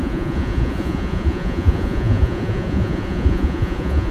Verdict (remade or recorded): remade